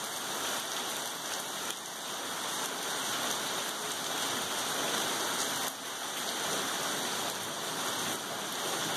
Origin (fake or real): real